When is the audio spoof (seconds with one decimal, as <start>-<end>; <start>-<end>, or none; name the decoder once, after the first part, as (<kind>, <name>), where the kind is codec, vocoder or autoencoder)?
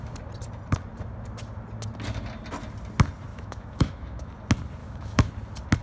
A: 3.3-4.3 (autoencoder, DAC-VAE); 4.8-5.3